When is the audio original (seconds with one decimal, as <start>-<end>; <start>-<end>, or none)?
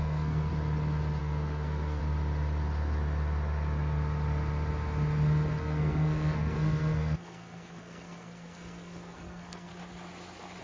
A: 0.5-1.2; 2.0-5.6; 9.7-10.6